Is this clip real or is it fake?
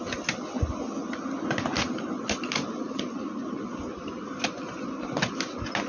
real